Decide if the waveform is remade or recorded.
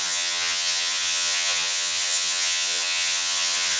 remade